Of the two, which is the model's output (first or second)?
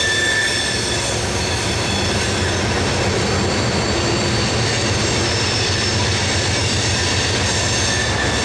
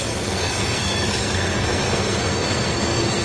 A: second